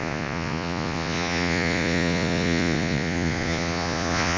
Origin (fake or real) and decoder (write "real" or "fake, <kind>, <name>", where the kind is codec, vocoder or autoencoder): fake, vocoder, Vocos